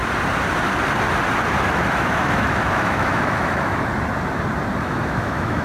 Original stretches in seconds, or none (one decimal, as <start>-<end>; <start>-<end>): 0.0-1.7; 3.9-4.8